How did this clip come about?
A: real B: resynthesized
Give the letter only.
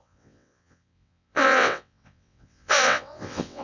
B